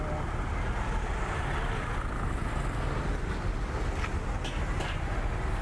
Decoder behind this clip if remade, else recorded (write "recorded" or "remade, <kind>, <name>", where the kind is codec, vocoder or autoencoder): recorded